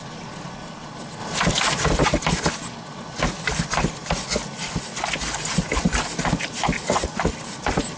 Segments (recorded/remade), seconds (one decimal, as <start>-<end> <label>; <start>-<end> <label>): 0.0-8.0 recorded